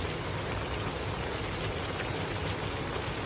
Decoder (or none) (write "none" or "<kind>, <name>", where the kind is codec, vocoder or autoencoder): none